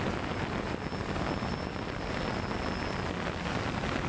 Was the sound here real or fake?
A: real